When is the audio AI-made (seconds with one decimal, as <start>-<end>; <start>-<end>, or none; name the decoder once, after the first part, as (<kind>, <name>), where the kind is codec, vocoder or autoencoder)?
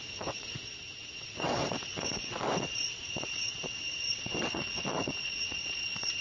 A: 0.0-6.2 (vocoder, WaveNeXt)